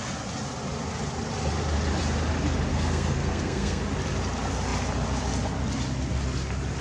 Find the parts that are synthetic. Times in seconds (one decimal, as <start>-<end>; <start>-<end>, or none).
2.7-3.8